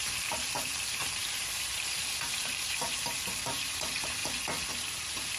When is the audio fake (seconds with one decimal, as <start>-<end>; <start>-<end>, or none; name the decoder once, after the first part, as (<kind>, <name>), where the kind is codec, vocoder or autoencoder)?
0.0-4.2 (vocoder, BigVGAN v2); 4.7-5.4

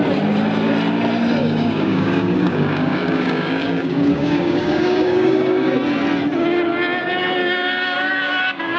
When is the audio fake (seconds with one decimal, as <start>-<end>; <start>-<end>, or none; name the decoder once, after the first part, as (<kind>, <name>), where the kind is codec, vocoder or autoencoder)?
1.4-5.7 (codec, DAC); 7.4-8.8

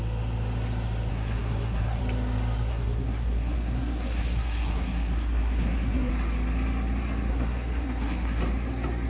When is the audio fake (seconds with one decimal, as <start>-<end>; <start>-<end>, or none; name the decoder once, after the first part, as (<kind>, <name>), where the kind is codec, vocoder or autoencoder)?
1.1-2.0 (codec, SNAC); 2.7-6.1; 7.3-8.4

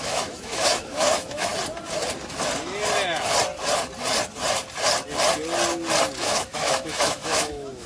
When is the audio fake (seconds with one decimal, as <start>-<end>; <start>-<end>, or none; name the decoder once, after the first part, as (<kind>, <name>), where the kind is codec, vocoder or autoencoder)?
0.0-1.5 (autoencoder, DAC-VAE); 6.2-7.9

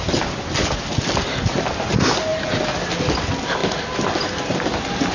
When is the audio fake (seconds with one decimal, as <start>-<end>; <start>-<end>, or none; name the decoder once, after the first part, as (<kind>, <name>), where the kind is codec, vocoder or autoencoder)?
none

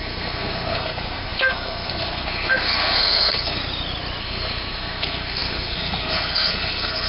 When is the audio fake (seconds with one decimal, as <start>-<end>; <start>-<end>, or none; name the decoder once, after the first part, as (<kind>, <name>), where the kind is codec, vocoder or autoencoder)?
0.0-3.6 (codec, SNAC); 4.2-7.1

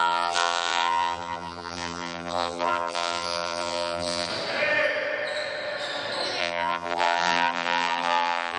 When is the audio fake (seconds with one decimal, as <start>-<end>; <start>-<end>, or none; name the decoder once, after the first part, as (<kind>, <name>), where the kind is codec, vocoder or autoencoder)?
0.0-4.3 (vocoder, BigVGAN v2); 6.4-8.6